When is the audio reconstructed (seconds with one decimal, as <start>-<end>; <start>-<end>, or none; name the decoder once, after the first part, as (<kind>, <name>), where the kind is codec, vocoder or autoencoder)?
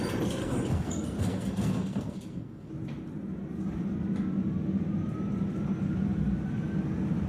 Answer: 0.4-2.7 (codec, SNAC)